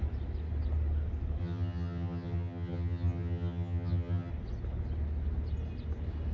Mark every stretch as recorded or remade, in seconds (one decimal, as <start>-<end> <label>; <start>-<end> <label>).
0.0-1.4 recorded; 1.4-4.3 remade; 4.3-6.3 recorded